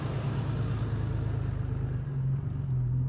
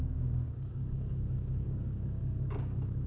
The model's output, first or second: second